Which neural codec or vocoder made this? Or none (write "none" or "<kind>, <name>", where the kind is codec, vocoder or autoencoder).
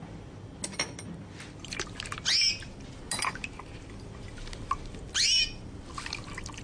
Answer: none